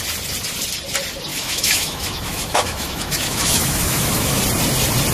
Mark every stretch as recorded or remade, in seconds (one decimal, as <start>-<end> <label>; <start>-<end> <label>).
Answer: 0.0-1.3 recorded; 1.3-4.4 remade; 4.4-5.1 recorded